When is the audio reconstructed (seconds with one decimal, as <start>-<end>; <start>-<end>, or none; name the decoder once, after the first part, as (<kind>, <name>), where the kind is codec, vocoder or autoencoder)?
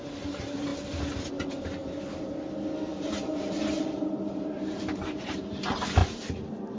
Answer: 1.8-2.4 (vocoder, BigVGAN v2); 2.9-5.4; 6.0-6.8